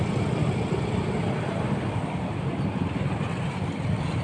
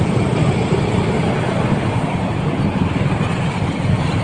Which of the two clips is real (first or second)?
first